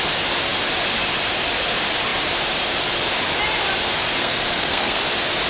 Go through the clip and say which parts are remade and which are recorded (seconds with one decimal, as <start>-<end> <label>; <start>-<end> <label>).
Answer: 0.0-4.2 recorded; 4.2-5.0 remade; 5.0-5.5 recorded

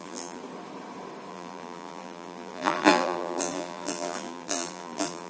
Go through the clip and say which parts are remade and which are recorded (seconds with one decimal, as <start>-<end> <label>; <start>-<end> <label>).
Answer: 0.0-0.4 remade; 0.4-1.3 recorded; 1.3-5.3 remade

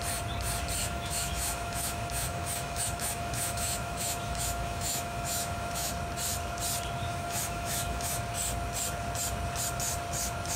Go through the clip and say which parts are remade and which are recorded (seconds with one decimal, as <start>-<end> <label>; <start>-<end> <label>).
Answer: 0.0-0.8 recorded; 0.8-5.9 remade; 5.9-7.1 recorded; 7.1-8.2 remade; 8.2-10.6 recorded

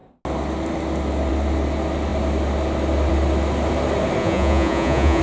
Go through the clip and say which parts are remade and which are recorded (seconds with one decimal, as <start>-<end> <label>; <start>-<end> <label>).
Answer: 0.0-4.2 recorded; 4.2-5.2 remade

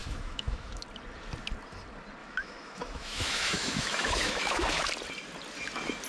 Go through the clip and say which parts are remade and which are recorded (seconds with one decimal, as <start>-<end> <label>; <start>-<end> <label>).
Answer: 0.0-0.8 remade; 0.8-2.2 recorded; 2.2-4.9 remade; 4.9-6.1 recorded

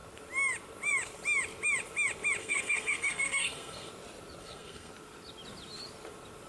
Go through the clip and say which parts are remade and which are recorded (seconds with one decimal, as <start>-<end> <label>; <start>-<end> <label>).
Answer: 0.0-2.4 recorded; 2.4-3.9 remade; 3.9-4.4 recorded; 4.4-4.9 remade; 4.9-6.5 recorded

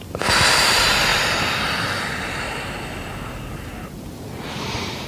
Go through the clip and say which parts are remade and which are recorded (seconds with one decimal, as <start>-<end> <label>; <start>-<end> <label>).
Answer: 0.0-5.1 recorded

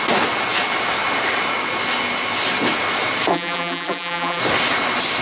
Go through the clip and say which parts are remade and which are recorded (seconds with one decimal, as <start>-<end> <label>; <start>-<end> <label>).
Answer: 0.0-3.3 recorded; 3.3-4.4 remade; 4.4-5.2 recorded